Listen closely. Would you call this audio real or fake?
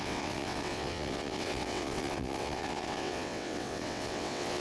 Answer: fake